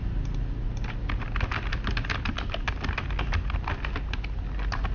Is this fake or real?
real